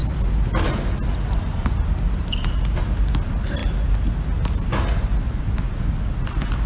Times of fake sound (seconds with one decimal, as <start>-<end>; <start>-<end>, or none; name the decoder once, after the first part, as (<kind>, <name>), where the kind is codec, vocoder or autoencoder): none